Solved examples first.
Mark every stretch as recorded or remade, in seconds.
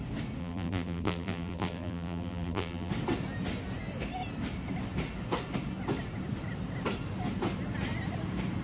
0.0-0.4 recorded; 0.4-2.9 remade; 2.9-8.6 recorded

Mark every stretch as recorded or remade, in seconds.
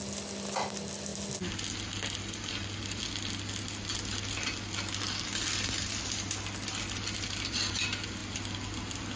0.0-9.2 recorded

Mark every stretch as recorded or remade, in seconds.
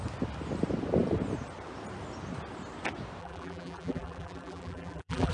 0.0-3.2 recorded; 3.2-5.3 remade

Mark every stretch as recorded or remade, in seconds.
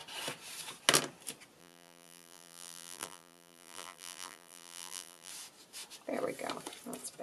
0.0-1.6 recorded; 1.6-5.3 remade; 5.3-7.2 recorded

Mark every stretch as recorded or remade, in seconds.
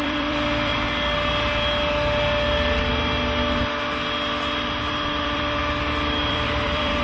0.0-0.7 remade; 0.7-4.9 recorded; 4.9-5.6 remade; 5.6-6.2 recorded; 6.2-7.0 remade